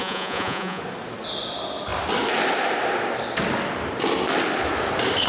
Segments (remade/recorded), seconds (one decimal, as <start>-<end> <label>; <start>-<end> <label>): 0.0-0.8 remade; 0.8-5.3 recorded